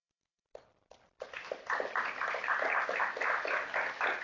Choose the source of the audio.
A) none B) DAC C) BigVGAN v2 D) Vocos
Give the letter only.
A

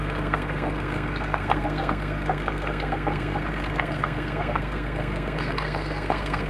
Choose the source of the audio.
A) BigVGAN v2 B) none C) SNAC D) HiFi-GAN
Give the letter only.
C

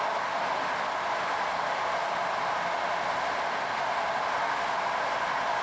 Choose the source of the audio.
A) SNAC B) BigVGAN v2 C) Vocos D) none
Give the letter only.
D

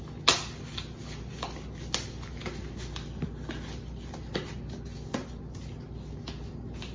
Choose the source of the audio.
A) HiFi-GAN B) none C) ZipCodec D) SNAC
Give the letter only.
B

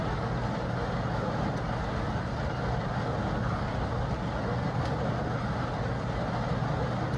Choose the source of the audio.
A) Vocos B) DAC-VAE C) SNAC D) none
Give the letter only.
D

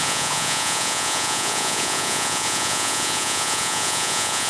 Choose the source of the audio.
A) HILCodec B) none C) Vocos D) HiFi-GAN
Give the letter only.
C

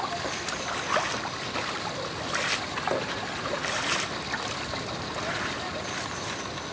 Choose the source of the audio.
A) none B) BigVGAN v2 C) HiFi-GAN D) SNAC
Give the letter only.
A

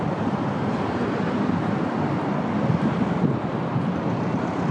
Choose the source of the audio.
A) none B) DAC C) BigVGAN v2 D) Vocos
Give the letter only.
A